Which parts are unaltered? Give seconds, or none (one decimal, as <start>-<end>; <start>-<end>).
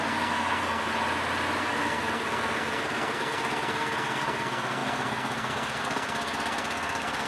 0.9-1.6